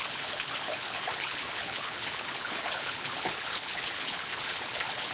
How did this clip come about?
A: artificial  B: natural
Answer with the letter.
A